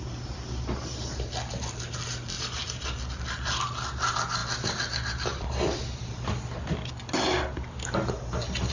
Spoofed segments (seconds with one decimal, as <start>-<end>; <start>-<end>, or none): none